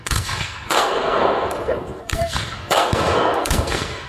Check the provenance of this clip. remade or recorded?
remade